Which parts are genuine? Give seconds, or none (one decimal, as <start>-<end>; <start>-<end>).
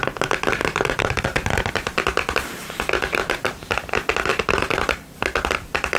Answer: 0.0-0.6; 1.2-2.1; 3.7-4.3; 5.1-6.0